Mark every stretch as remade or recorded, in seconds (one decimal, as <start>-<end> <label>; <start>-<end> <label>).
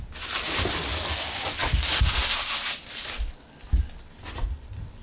0.0-5.0 recorded